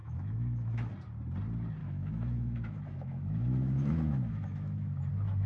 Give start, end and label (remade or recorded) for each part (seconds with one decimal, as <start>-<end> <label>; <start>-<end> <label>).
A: 0.0-0.9 remade; 0.9-1.8 recorded; 1.8-5.1 remade; 5.1-5.5 recorded